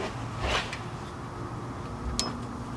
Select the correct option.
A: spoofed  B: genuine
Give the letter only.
B